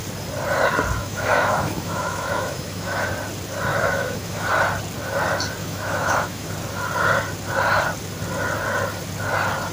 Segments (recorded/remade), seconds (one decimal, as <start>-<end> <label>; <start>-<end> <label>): 0.0-1.0 recorded; 1.0-3.1 remade; 3.1-3.7 recorded; 3.7-4.5 remade; 4.5-5.6 recorded; 5.6-6.5 remade; 6.5-9.7 recorded